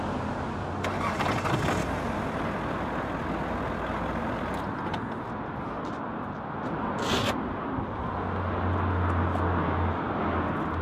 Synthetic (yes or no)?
no